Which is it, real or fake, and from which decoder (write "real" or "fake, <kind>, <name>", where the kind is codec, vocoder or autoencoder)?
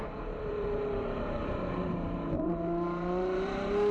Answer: fake, vocoder, BigVGAN v2